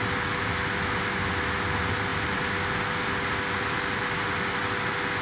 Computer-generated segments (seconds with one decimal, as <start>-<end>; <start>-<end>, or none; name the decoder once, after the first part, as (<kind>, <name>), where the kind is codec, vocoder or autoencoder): none